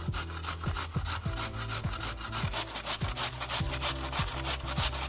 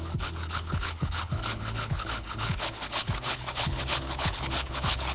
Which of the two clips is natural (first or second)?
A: first